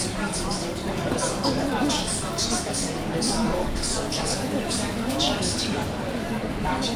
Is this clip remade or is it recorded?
remade